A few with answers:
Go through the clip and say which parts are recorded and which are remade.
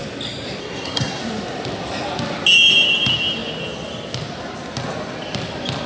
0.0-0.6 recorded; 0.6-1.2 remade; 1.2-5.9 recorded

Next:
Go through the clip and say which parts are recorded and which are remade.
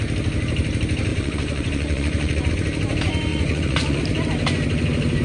0.0-1.1 recorded; 1.1-2.5 remade; 2.5-3.3 recorded; 3.3-4.0 remade; 4.0-5.2 recorded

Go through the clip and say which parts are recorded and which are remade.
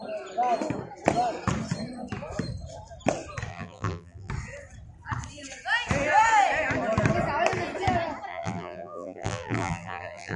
0.0-3.5 recorded; 3.5-4.3 remade; 4.3-8.3 recorded; 8.3-10.4 remade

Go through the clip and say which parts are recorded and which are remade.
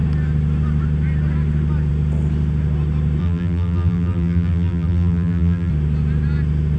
0.0-3.2 recorded; 3.2-5.7 remade; 5.7-6.8 recorded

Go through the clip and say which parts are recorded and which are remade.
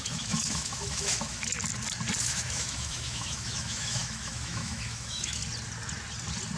0.0-1.5 remade; 1.5-2.2 recorded; 2.2-5.4 remade; 5.4-6.6 recorded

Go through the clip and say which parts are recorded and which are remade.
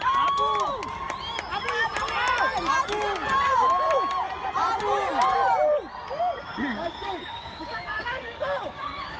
0.0-6.7 recorded; 6.7-9.2 remade